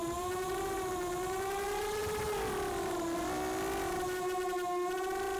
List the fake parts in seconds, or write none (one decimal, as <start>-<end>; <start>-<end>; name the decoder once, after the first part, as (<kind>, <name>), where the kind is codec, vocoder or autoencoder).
none